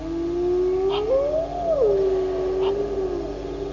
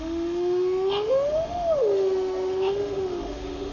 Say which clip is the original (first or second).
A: first